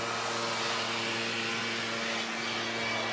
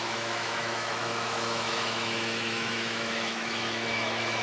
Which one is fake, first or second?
second